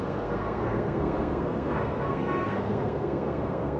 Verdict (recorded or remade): remade